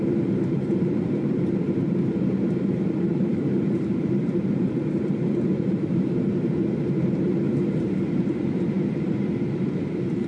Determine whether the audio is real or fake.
fake